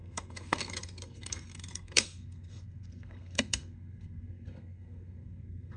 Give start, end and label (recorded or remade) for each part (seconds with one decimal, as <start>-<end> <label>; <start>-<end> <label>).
0.0-5.8 remade